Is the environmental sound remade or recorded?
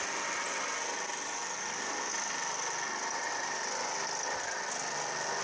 recorded